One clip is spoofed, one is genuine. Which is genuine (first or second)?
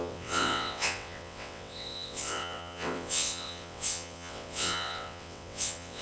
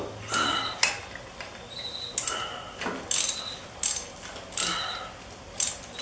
second